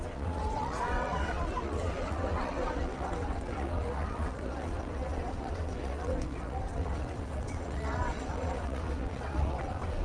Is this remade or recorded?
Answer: remade